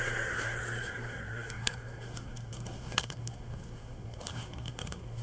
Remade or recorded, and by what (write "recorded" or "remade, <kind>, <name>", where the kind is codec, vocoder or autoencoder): remade, codec, SNAC